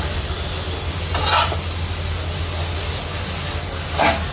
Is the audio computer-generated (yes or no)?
no